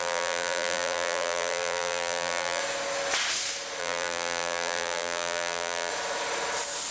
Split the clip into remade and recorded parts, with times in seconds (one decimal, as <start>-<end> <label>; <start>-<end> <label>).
0.0-2.6 remade; 2.6-3.8 recorded; 3.8-5.9 remade; 5.9-6.9 recorded